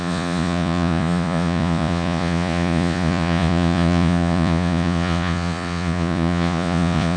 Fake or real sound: fake